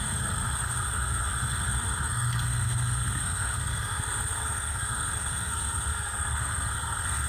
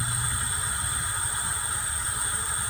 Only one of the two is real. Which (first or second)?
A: second